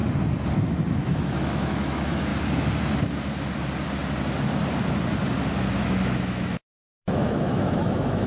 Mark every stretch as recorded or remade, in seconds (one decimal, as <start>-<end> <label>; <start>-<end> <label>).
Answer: 0.0-1.0 recorded; 1.0-2.3 remade; 2.3-5.8 recorded; 5.8-8.3 remade